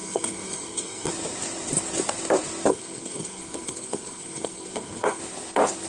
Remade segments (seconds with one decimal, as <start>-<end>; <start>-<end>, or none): 0.0-1.1; 2.7-5.2